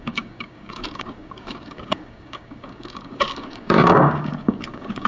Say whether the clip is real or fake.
fake